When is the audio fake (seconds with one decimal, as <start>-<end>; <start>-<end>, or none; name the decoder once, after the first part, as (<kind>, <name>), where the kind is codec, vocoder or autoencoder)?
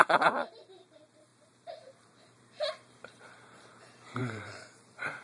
0.0-5.2 (vocoder, BigVGAN v2)